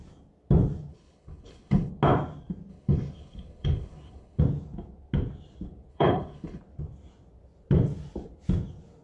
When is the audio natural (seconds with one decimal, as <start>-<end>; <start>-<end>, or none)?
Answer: 0.0-0.9; 1.9-2.7; 4.4-5.9; 6.6-9.0